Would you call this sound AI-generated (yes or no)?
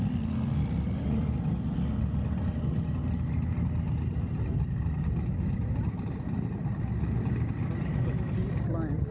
no